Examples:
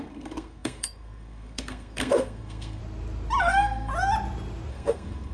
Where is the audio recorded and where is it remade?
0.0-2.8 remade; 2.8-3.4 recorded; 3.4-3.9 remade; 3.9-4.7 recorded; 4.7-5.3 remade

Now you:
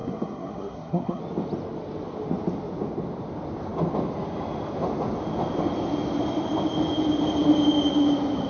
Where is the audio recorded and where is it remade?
0.0-1.2 remade; 1.2-8.5 recorded

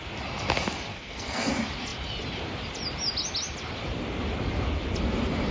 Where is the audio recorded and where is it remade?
0.0-0.9 recorded; 0.9-1.5 remade; 1.5-5.5 recorded